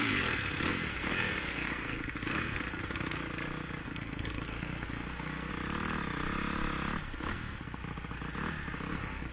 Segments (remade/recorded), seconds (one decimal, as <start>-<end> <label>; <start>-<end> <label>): 0.0-3.2 remade; 3.2-3.8 recorded; 3.8-5.5 remade; 5.5-7.0 recorded; 7.0-7.8 remade; 7.8-8.9 recorded; 8.9-9.3 remade